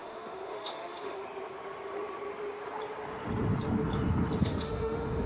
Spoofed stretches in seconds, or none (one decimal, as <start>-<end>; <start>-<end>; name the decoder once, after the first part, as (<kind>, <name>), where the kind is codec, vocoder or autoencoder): 0.0-1.2 (autoencoder, DAC-VAE); 4.4-5.3